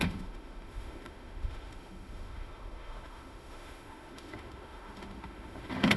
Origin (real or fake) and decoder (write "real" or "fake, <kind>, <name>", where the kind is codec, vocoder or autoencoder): fake, autoencoder, DAC-VAE